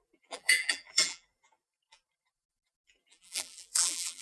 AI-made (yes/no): yes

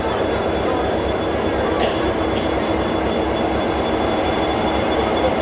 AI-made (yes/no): yes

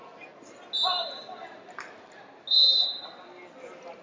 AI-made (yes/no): no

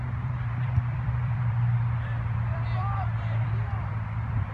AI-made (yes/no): yes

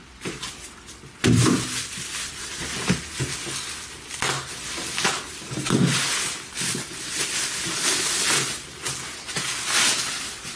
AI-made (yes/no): no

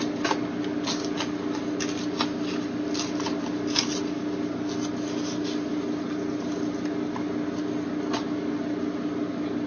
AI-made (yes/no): no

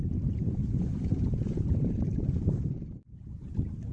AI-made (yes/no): yes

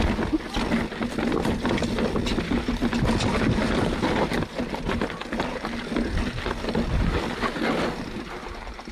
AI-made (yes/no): no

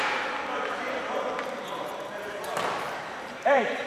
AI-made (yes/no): yes